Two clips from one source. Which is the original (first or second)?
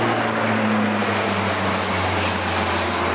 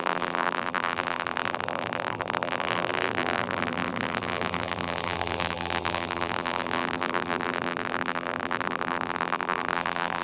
first